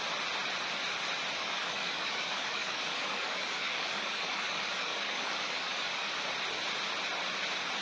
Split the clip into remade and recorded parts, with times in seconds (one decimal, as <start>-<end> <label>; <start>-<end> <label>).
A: 0.0-1.4 recorded; 1.4-6.1 remade; 6.1-7.8 recorded